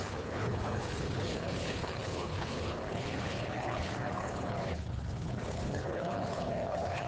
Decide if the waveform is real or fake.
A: fake